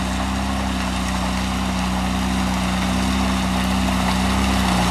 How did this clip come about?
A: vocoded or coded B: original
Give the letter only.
B